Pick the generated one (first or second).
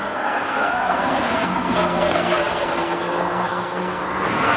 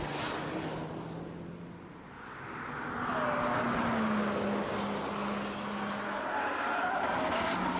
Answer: first